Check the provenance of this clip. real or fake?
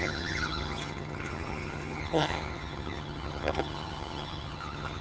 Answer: fake